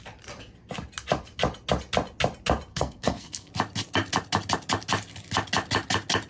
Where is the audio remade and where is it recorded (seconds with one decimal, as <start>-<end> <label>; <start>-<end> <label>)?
0.0-2.7 recorded; 2.7-3.5 remade; 3.5-6.3 recorded